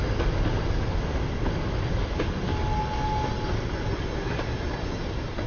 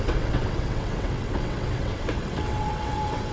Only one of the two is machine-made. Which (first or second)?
second